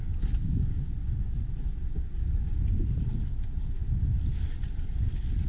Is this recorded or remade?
recorded